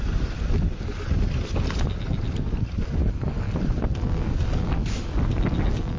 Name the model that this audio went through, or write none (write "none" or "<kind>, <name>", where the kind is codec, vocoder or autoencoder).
none